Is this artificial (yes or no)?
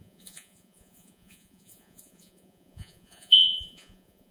yes